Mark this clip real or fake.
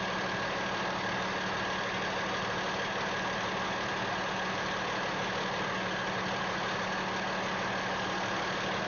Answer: real